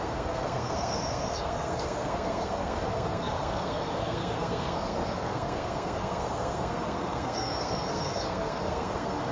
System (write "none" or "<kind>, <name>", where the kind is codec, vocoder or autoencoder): codec, SNAC